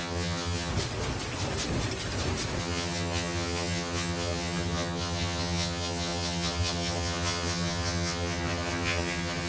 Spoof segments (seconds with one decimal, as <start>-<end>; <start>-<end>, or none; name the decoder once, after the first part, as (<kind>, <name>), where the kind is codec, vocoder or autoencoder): 0.0-0.7 (vocoder, HiFi-GAN); 2.6-9.5